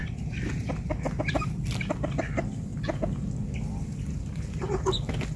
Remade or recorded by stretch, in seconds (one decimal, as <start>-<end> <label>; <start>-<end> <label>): 0.0-5.4 recorded